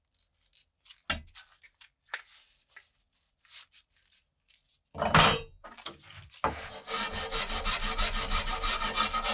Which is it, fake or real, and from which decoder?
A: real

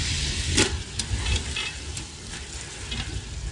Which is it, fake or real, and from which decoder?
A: real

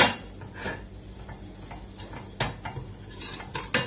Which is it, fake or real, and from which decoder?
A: real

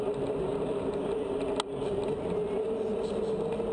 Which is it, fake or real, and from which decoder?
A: real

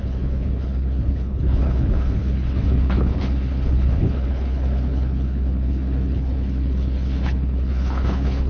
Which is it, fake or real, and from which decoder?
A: fake, codec, HILCodec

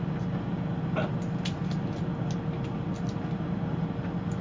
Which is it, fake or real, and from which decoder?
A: real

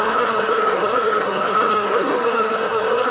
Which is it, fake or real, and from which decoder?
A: fake, codec, SNAC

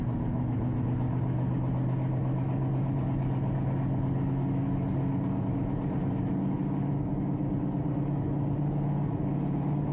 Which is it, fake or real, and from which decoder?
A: real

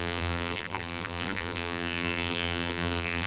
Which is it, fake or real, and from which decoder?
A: fake, vocoder, BigVGAN v2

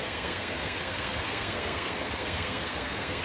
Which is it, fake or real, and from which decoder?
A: fake, codec, SNAC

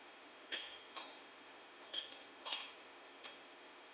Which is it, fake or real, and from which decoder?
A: fake, autoencoder, DAC-VAE